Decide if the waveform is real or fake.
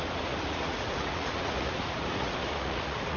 fake